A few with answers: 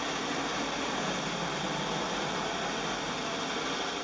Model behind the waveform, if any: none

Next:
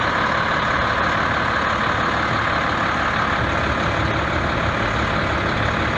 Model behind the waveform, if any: none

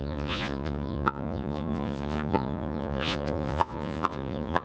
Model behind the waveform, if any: vocoder, Vocos